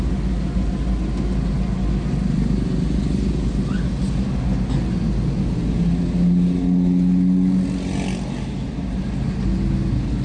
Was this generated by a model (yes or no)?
no